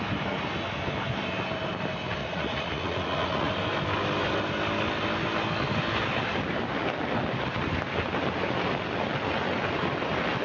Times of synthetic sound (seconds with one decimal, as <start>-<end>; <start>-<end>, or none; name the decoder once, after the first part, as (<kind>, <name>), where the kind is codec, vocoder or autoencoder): 2.2-3.5 (vocoder, Vocos)